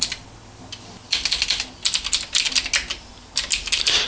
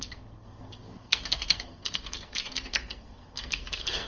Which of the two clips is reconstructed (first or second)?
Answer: second